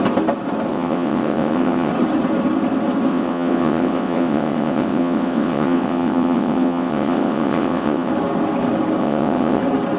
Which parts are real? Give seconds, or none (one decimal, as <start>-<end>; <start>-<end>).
0.0-0.7; 1.9-3.1; 8.1-9.0; 9.6-10.0